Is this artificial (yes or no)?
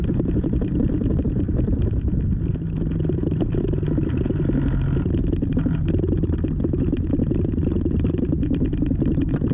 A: no